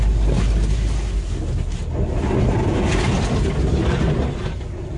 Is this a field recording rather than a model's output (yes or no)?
yes